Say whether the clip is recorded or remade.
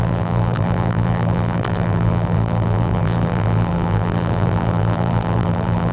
remade